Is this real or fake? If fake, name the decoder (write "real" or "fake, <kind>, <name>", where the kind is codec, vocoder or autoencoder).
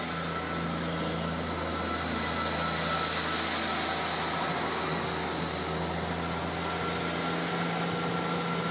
real